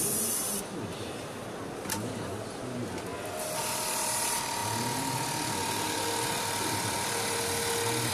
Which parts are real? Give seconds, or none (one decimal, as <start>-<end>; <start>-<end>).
0.0-8.1